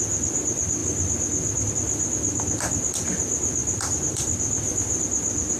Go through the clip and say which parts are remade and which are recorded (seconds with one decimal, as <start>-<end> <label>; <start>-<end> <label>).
0.0-5.6 recorded